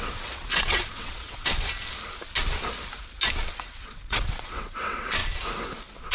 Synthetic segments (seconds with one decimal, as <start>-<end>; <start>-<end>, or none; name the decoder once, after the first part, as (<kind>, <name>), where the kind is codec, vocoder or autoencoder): 0.0-1.5 (vocoder, WaveNeXt); 3.5-5.2